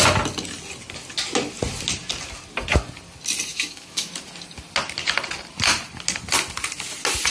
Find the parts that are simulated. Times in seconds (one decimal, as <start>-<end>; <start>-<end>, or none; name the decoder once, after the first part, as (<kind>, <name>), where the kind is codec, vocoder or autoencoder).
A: 3.5-4.1 (autoencoder, DAC-VAE)